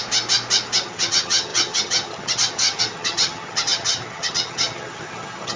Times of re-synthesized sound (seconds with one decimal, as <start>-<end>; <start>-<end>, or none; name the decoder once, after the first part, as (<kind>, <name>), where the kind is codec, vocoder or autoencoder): 0.8-5.6 (vocoder, HiFi-GAN)